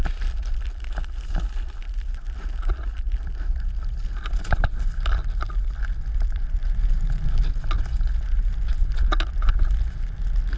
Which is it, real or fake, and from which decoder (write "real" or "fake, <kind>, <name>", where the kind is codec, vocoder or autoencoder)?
real